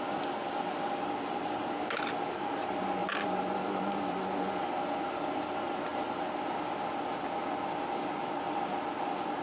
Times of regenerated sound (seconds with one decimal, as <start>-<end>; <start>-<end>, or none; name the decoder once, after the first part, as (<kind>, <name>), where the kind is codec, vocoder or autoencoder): none